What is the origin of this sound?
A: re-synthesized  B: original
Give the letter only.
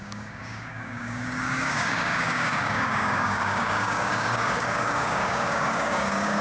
A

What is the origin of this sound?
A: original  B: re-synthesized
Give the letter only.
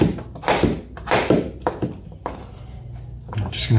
A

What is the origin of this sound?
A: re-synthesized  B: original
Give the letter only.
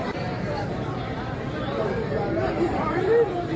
A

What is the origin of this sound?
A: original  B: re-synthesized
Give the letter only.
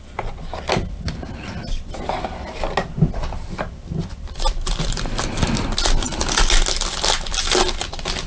A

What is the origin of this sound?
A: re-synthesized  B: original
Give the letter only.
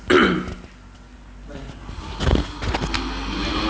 B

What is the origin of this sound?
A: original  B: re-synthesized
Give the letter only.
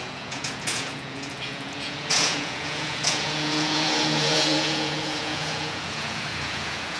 B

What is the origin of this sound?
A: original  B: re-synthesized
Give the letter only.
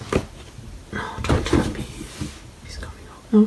A